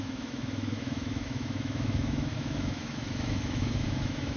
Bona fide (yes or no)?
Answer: no